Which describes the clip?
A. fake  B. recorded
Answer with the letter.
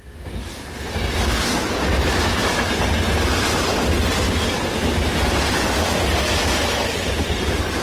B